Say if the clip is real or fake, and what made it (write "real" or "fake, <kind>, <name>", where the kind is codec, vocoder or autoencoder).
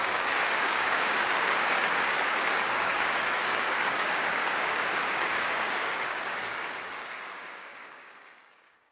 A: fake, codec, DAC